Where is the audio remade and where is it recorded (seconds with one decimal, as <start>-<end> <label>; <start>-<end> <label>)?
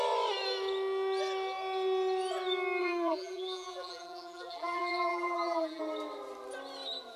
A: 0.0-2.8 recorded; 2.8-5.8 remade; 5.8-7.2 recorded